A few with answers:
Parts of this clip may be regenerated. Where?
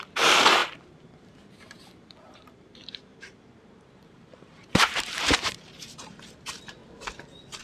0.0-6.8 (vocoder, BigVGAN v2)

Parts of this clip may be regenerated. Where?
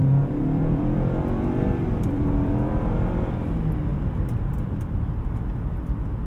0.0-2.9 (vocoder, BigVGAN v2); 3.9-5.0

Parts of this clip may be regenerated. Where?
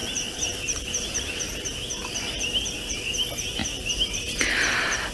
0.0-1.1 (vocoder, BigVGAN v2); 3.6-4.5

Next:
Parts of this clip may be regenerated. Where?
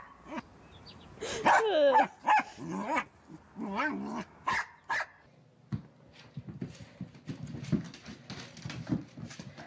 none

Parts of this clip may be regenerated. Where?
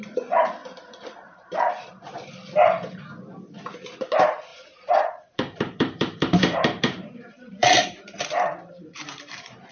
0.6-2.0 (vocoder, BigVGAN v2); 4.5-9.7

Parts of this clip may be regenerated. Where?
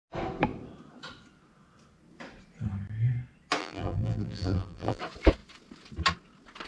3.6-5.0 (vocoder, BigVGAN v2)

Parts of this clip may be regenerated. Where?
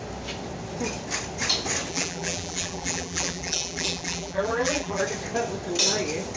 1.9-5.0 (vocoder, BigVGAN v2)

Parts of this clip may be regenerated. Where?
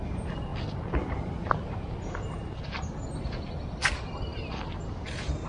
none